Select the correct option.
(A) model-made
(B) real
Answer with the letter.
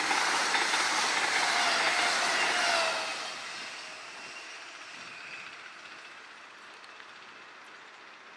B